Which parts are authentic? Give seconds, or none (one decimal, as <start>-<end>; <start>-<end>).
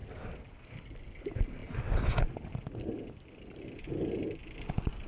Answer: 0.0-1.2; 1.6-3.8; 4.2-5.1